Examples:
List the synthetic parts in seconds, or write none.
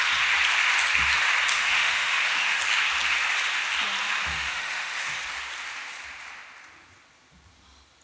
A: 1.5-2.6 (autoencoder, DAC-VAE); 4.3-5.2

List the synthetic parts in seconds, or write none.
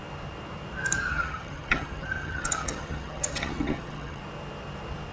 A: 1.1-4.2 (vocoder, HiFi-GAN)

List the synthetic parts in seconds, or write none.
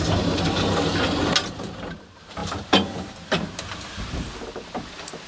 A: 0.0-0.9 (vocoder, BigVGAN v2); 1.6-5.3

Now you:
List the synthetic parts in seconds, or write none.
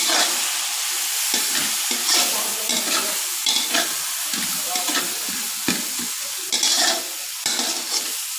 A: none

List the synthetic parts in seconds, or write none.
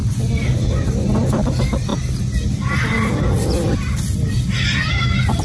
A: none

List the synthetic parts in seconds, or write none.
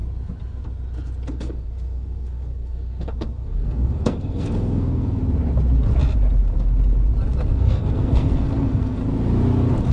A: 1.3-5.2 (codec, SNAC); 7.5-9.0